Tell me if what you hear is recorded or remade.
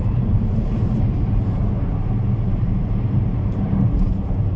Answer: remade